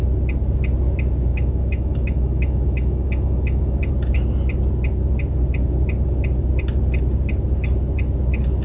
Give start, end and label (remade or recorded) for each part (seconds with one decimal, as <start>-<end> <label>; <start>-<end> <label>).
0.0-1.3 recorded; 1.3-3.9 remade; 3.9-8.6 recorded